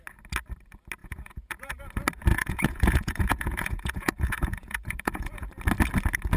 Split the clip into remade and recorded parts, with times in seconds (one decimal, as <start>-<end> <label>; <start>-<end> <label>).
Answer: 0.0-1.0 recorded; 1.0-1.8 remade; 1.8-2.3 recorded; 2.3-5.5 remade; 5.5-6.4 recorded